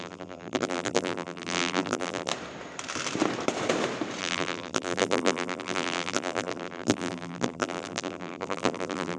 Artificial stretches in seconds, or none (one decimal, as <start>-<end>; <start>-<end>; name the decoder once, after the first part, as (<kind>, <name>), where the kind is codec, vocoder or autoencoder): 0.0-2.3 (vocoder, BigVGAN v2); 4.2-9.2